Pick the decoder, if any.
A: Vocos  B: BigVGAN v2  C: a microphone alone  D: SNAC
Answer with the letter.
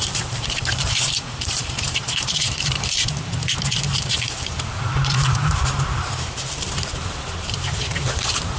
B